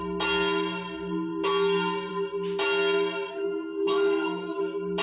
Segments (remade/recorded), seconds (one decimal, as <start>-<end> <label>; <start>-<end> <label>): 0.0-3.3 recorded; 3.3-4.6 remade; 4.6-5.0 recorded